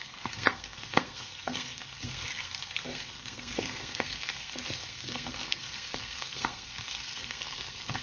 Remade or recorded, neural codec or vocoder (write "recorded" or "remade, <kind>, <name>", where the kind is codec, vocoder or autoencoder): remade, codec, SNAC